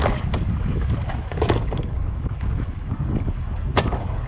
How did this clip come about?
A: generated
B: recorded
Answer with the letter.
A